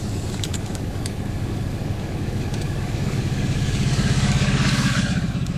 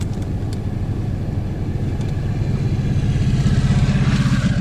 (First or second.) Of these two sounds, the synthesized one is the first